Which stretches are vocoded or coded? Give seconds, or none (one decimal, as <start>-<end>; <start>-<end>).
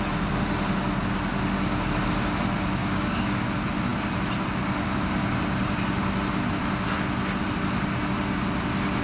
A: 2.8-3.5